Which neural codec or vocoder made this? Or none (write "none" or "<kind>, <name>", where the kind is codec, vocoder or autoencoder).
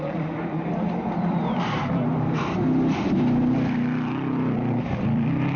vocoder, BigVGAN v2